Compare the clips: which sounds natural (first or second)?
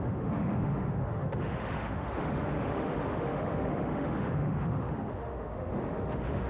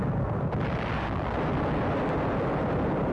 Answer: second